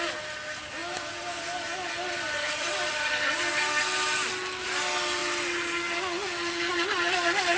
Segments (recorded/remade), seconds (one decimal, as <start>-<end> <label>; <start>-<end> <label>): 0.0-0.8 recorded; 0.8-3.5 remade; 3.5-7.6 recorded